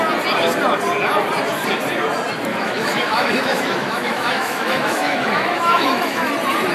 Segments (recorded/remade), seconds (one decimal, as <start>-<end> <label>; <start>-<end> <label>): 0.0-2.5 recorded; 2.5-6.3 remade; 6.3-6.7 recorded